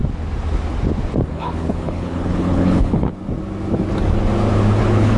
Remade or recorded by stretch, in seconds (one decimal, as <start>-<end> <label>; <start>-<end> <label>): 0.0-1.3 recorded; 1.3-3.1 remade; 3.1-4.8 recorded; 4.8-5.2 remade